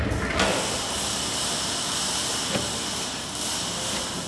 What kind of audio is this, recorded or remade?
recorded